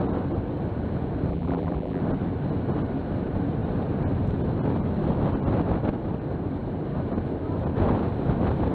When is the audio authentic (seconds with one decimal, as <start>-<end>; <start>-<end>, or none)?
0.0-1.3; 2.0-8.7